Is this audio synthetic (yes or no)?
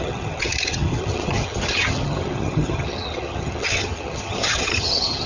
yes